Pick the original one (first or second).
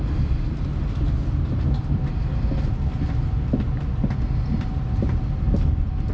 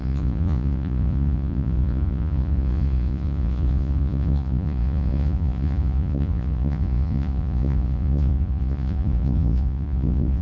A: first